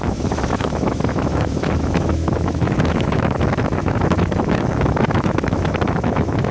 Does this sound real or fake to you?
fake